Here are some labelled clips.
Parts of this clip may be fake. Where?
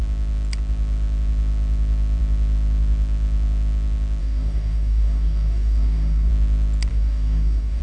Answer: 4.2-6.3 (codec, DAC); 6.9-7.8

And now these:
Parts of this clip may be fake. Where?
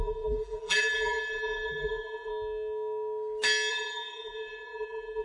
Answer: 0.0-2.3 (vocoder, BigVGAN v2); 3.7-5.2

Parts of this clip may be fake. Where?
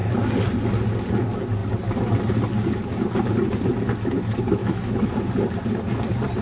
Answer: 4.6-5.1 (autoencoder, DAC-VAE)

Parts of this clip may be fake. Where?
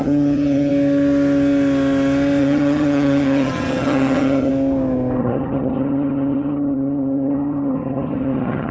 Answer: 0.0-0.7 (vocoder, HiFi-GAN); 2.4-4.5; 5.2-8.7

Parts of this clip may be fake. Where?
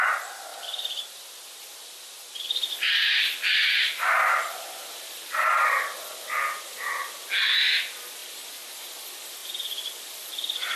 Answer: 0.5-5.8 (vocoder, BigVGAN v2); 8.2-8.9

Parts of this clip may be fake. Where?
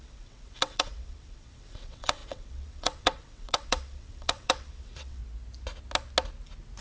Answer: 0.0-5.2 (vocoder, WaveNeXt)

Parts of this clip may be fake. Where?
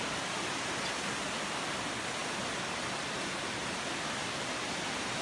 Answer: none